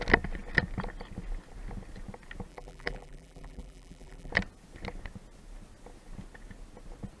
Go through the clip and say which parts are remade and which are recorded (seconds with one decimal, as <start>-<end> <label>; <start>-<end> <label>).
0.0-2.5 recorded; 2.5-4.3 remade; 4.3-7.2 recorded